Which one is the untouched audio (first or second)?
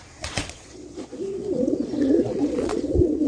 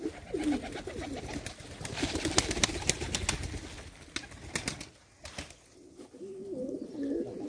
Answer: second